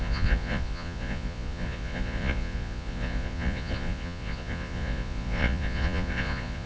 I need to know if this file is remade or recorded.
remade